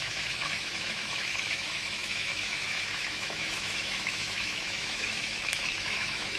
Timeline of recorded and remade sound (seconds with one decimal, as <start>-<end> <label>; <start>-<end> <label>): 0.0-6.4 remade

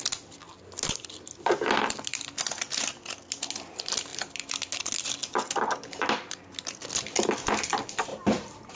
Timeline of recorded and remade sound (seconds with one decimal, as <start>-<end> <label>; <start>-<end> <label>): 0.0-8.1 recorded; 8.1-8.8 remade

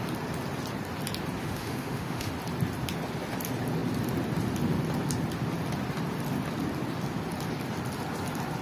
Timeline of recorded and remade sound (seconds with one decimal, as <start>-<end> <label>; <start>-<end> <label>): 0.0-1.4 recorded; 1.4-2.3 remade; 2.3-8.6 recorded

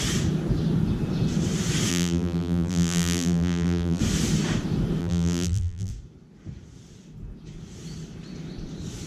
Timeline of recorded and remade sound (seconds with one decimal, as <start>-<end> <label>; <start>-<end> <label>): 0.0-1.9 recorded; 1.9-4.0 remade; 4.0-5.0 recorded; 5.0-5.9 remade; 5.9-9.1 recorded